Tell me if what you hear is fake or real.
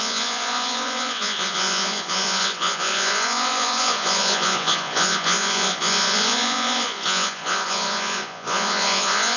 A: fake